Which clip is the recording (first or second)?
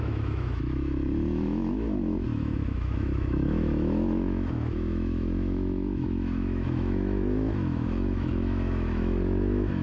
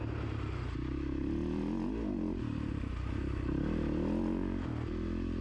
second